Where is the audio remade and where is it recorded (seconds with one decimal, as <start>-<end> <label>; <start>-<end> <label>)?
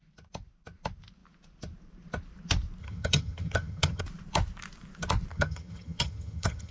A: 0.0-2.8 recorded; 2.8-4.0 remade; 4.0-5.3 recorded; 5.3-6.7 remade